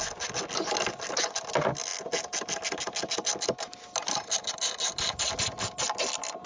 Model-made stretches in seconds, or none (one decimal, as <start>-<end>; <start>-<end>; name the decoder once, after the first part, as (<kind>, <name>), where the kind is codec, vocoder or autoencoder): none